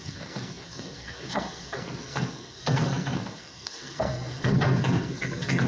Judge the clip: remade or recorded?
remade